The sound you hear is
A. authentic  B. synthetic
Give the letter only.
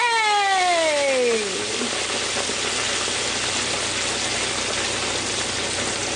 A